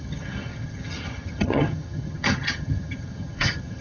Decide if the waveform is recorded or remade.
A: remade